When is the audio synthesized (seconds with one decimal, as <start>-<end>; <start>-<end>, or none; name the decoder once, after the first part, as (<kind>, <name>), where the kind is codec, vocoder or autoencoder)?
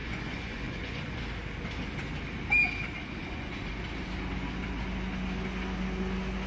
0.0-1.2 (vocoder, Vocos); 3.2-3.8